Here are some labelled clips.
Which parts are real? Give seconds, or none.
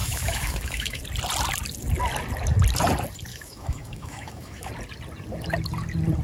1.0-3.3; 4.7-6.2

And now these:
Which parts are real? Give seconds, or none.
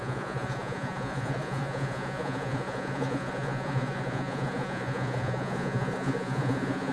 none